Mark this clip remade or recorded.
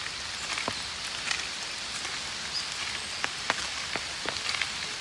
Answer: recorded